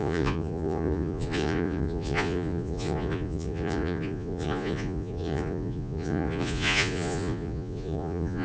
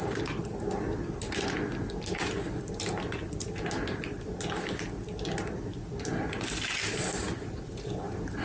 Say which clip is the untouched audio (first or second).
second